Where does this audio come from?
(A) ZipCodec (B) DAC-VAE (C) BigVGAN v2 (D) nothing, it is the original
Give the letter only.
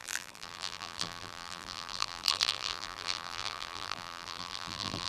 C